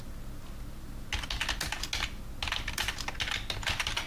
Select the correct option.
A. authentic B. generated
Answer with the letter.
A